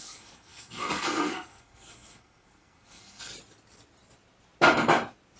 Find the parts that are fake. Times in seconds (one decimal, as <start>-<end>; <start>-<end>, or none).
0.0-3.3